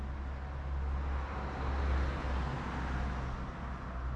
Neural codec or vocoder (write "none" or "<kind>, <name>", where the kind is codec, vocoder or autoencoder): none